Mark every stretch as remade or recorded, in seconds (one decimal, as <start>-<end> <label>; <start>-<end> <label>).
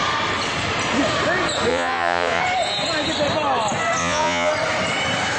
0.0-1.7 recorded; 1.7-2.4 remade; 2.4-4.0 recorded; 4.0-4.5 remade; 4.5-5.4 recorded